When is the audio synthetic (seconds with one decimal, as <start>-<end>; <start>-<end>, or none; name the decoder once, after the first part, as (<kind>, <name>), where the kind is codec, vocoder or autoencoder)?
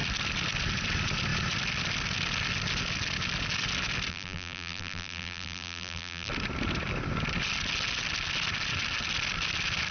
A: 4.1-6.3 (vocoder, BigVGAN v2)